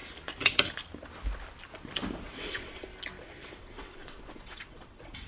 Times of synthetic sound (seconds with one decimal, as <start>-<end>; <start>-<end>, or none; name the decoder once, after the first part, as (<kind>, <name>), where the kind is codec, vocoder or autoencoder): 2.2-2.9 (vocoder, WaveNeXt); 3.6-5.3